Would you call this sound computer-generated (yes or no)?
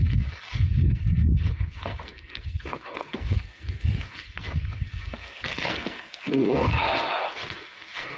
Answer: yes